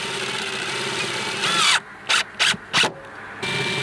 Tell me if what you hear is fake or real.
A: real